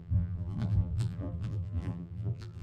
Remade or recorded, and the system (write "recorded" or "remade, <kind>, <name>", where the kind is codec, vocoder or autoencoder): remade, vocoder, BigVGAN v2